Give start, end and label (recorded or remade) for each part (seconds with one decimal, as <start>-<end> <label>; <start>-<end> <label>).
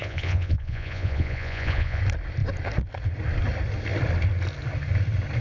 0.0-2.0 remade; 2.0-5.4 recorded